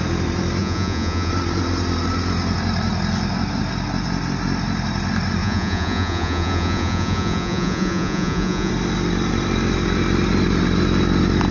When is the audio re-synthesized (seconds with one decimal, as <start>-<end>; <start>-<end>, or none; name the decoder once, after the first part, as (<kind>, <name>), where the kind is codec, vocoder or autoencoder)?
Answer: 0.6-1.3 (vocoder, Vocos); 5.4-8.7